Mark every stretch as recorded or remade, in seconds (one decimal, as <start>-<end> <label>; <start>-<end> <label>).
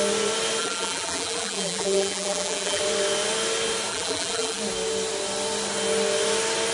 0.0-0.6 recorded; 0.6-2.8 remade; 2.8-3.9 recorded; 3.9-4.6 remade; 4.6-6.7 recorded